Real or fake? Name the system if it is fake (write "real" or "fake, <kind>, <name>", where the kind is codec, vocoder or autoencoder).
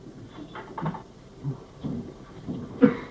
fake, vocoder, BigVGAN v2